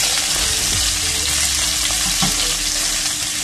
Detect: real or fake real